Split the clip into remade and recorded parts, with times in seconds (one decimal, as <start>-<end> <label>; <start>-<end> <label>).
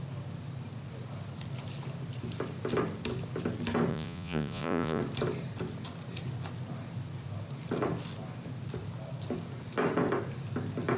0.0-3.9 recorded; 3.9-5.0 remade; 5.0-11.0 recorded